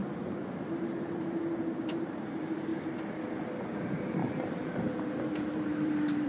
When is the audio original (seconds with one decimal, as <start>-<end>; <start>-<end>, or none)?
2.7-3.8